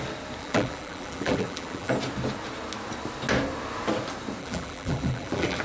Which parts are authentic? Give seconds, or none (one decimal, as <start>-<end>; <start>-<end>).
0.0-0.4; 1.9-4.4